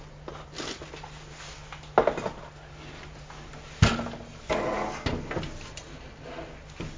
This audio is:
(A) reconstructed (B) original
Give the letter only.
B